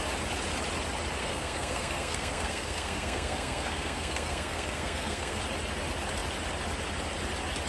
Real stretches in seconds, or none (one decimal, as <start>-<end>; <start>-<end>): 0.0-1.2; 5.4-7.7

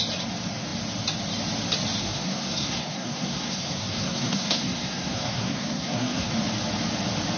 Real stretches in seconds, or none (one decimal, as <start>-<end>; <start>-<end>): 0.0-2.0; 6.3-7.4

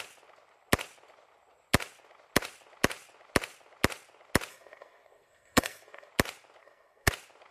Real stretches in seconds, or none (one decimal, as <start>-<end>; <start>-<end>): 0.0-4.5; 6.1-6.6; 7.1-7.5

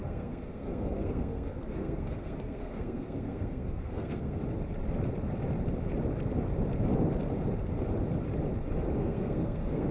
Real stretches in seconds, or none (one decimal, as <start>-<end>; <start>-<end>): 4.4-9.0

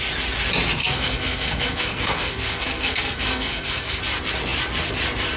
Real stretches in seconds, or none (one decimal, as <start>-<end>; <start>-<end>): 0.0-0.8; 4.0-5.4

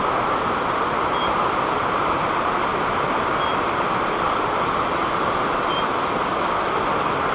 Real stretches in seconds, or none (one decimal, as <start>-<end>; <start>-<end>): 0.0-7.3

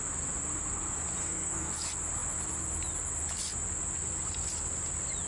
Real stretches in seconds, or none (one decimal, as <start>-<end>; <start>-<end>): 0.0-1.2; 1.7-5.3